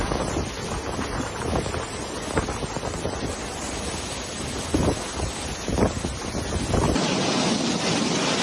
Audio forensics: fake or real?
real